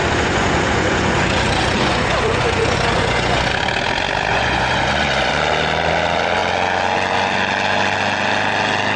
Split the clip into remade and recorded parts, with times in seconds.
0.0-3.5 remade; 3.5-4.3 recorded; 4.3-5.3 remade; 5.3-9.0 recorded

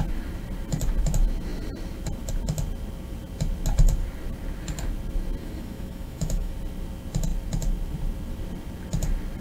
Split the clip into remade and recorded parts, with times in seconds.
0.0-5.4 recorded; 5.4-6.5 remade; 6.5-9.4 recorded

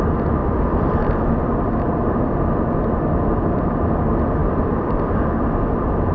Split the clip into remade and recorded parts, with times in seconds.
0.0-0.4 recorded; 0.4-1.7 remade; 1.7-4.4 recorded; 4.4-5.4 remade; 5.4-6.1 recorded

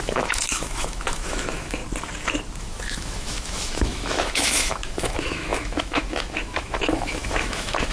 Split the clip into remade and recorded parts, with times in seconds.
0.0-1.8 remade; 1.8-2.6 recorded; 2.6-7.9 remade